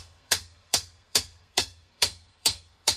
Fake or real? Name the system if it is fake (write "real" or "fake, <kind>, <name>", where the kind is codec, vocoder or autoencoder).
fake, codec, SNAC